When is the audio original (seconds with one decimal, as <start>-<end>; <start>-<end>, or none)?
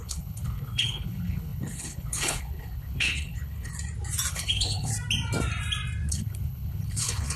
3.7-4.3; 4.9-6.1